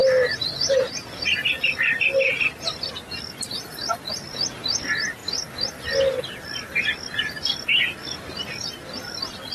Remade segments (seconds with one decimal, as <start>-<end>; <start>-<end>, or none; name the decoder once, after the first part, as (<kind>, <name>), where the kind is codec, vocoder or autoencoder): none